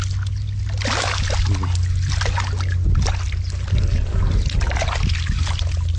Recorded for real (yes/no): yes